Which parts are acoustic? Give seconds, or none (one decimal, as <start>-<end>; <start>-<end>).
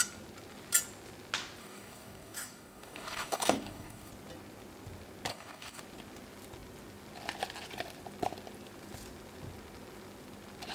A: 0.0-1.6; 4.1-5.3; 5.8-10.7